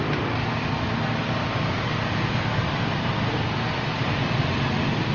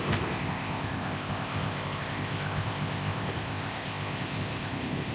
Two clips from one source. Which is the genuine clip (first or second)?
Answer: first